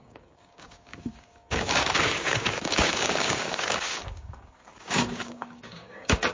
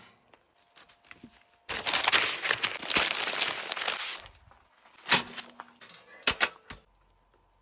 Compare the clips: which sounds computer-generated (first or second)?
first